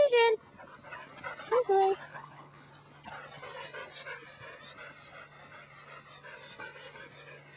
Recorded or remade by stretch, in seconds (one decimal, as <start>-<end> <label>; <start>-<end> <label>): 0.0-2.1 recorded; 2.1-2.7 remade; 2.7-7.6 recorded